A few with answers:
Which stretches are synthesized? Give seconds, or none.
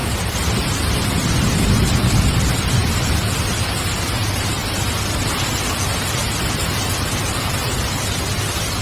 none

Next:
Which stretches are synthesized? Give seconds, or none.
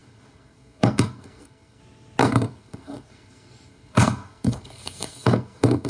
0.0-1.8 (codec, SNAC); 2.2-5.9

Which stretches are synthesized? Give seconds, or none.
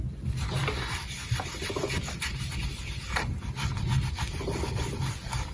none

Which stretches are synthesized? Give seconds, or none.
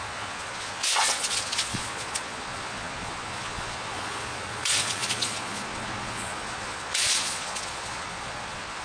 0.0-8.8 (vocoder, Vocos)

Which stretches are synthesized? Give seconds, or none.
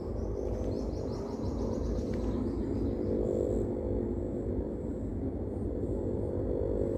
none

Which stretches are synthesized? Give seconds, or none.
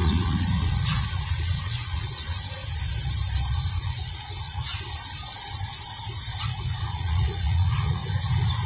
0.0-2.6 (vocoder, Vocos); 3.7-4.7; 6.4-8.0